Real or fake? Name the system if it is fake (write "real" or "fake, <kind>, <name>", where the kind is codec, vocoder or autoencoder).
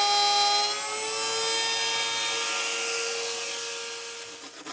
real